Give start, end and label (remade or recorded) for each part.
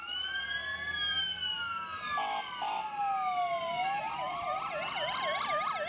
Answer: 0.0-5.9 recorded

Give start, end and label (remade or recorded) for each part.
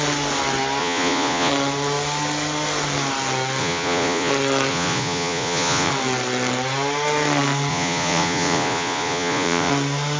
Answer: 0.0-0.8 recorded; 0.8-1.5 remade; 1.5-3.6 recorded; 3.6-4.3 remade; 4.3-4.7 recorded; 4.7-5.9 remade; 5.9-7.7 recorded; 7.7-9.7 remade; 9.7-10.2 recorded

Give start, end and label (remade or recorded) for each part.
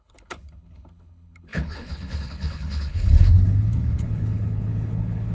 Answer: 0.0-5.3 remade